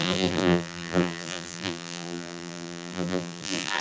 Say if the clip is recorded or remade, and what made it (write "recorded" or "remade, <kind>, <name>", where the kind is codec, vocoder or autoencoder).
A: remade, vocoder, BigVGAN v2